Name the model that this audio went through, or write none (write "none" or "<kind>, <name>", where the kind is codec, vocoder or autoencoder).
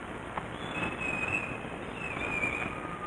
none